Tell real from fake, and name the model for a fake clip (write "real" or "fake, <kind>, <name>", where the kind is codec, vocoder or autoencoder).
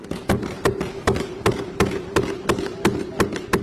real